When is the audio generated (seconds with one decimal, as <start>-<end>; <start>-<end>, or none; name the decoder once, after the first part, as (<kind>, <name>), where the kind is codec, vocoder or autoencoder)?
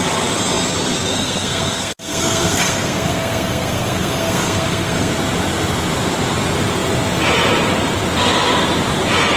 1.1-5.1 (codec, SNAC)